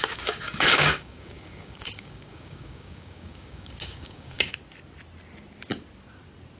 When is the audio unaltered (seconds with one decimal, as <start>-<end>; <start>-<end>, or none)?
4.5-6.6